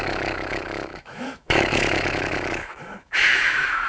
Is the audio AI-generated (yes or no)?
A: yes